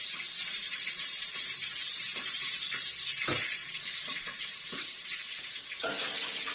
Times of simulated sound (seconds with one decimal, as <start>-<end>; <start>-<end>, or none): 0.0-1.4; 1.8-5.5